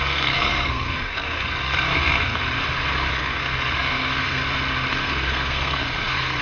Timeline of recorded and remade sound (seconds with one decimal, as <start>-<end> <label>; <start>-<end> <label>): 0.0-2.4 remade; 2.4-3.2 recorded; 3.2-4.4 remade; 4.4-4.9 recorded; 4.9-6.4 remade